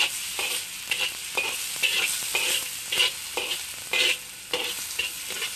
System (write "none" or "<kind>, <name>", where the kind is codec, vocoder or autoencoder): none